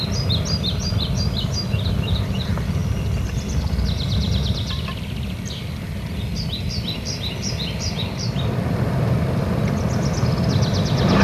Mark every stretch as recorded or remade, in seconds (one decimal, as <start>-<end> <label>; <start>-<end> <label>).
0.0-11.2 recorded